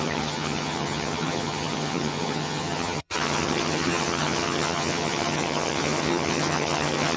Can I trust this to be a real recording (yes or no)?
no